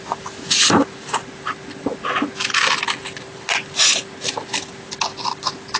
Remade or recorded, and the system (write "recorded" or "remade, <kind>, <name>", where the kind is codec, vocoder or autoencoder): recorded